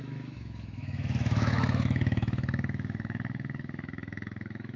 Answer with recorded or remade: remade